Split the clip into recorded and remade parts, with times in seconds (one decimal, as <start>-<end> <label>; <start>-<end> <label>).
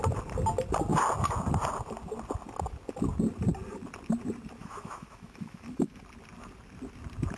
0.0-4.6 recorded; 4.6-6.0 remade; 6.0-7.4 recorded